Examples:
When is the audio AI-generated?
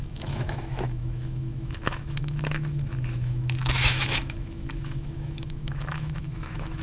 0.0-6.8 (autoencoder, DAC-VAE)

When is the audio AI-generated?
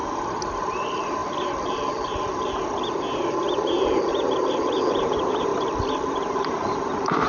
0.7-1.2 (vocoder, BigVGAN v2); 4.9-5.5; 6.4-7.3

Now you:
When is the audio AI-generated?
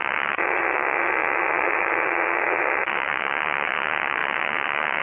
0.0-5.0 (vocoder, WaveNeXt)